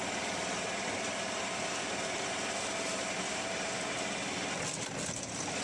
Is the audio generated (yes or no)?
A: yes